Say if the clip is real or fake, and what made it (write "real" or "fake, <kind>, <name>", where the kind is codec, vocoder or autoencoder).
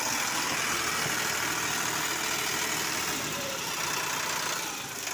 real